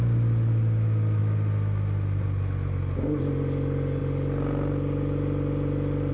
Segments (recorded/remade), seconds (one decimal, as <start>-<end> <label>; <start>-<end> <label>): 0.0-6.1 recorded